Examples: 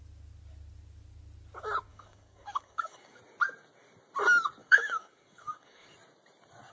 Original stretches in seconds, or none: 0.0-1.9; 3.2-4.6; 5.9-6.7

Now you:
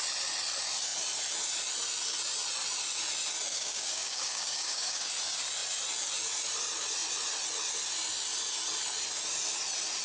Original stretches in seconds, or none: 0.0-3.5; 5.1-10.0